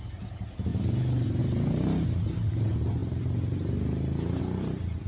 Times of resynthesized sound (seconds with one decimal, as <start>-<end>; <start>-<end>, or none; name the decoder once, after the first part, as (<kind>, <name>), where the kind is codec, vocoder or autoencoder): none